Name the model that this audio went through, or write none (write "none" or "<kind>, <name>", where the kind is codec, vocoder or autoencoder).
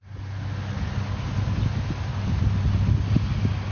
none